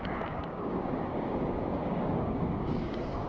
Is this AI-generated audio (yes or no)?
yes